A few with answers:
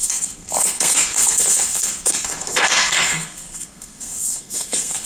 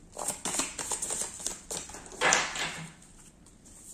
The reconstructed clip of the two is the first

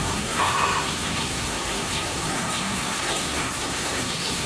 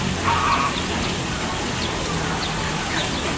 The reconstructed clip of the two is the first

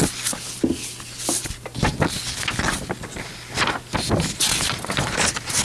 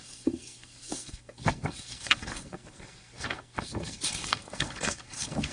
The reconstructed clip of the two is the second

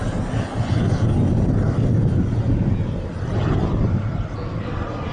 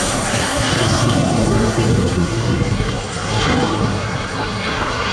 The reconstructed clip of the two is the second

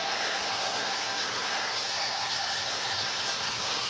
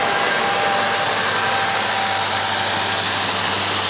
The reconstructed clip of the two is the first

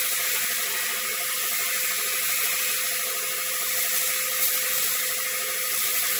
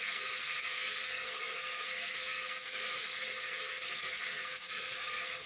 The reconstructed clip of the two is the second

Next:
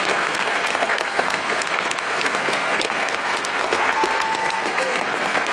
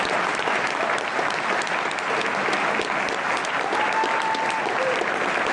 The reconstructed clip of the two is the first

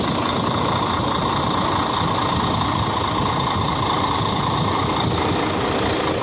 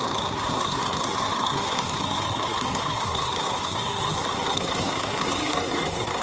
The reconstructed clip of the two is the second